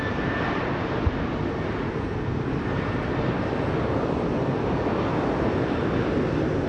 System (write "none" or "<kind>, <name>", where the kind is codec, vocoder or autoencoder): none